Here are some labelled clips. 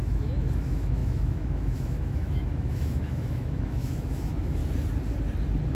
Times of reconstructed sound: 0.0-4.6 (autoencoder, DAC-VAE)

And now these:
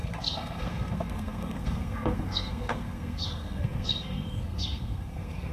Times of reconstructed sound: 0.0-5.5 (codec, SNAC)

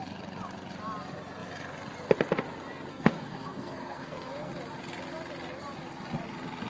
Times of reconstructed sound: 2.9-4.5 (codec, SNAC)

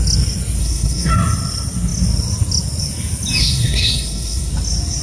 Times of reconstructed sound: 0.6-1.1 (codec, SNAC); 3.4-4.5